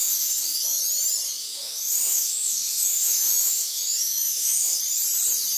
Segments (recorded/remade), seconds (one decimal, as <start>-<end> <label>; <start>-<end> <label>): 0.0-0.8 remade; 0.8-1.4 recorded; 1.4-4.8 remade; 4.8-5.6 recorded